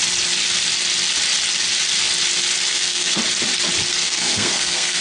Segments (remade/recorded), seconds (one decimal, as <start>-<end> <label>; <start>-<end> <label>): 0.0-2.7 recorded; 2.7-3.2 remade; 3.2-3.9 recorded; 3.9-5.0 remade